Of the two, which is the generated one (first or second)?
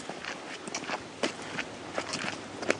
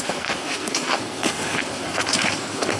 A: second